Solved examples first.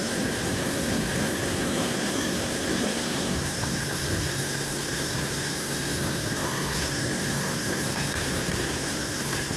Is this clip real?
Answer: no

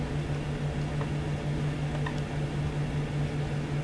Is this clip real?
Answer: yes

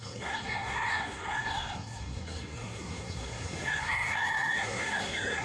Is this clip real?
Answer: no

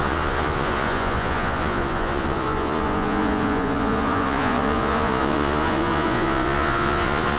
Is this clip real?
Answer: no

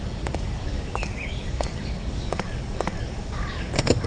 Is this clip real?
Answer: no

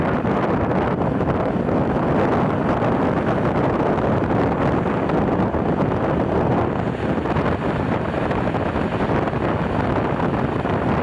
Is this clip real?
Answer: yes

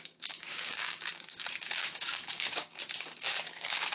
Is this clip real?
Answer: no